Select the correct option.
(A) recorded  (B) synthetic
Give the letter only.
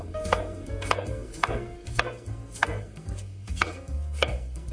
B